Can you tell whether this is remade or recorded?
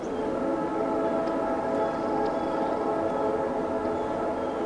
recorded